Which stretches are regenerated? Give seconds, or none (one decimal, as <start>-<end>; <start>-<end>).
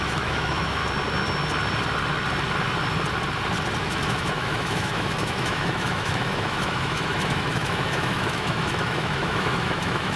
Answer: 0.0-0.8; 3.8-10.2